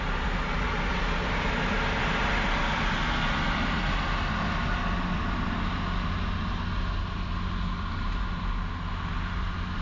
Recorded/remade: recorded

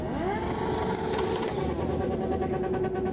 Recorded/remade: recorded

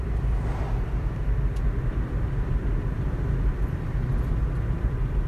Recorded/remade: recorded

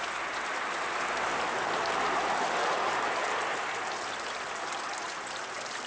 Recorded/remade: recorded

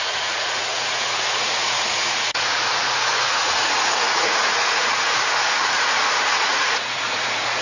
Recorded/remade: remade